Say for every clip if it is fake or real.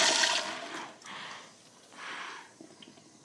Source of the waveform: real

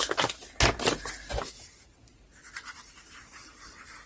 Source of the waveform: real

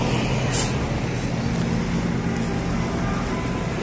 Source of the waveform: real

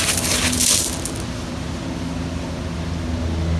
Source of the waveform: real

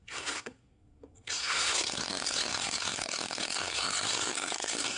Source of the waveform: fake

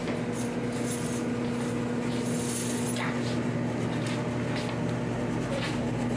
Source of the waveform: real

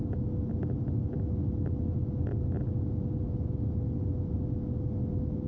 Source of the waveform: real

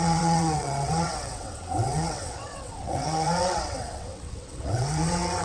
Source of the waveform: fake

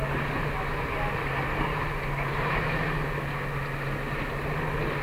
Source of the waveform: real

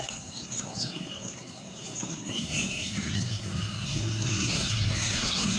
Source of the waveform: fake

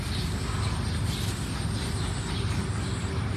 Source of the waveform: real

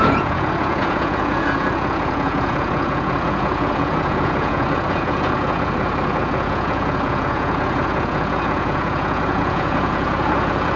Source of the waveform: fake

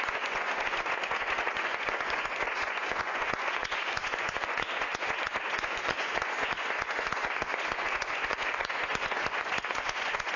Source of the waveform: fake